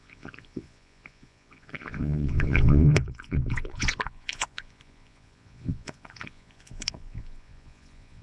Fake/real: fake